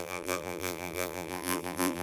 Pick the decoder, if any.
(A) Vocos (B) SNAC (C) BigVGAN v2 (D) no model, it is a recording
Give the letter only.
C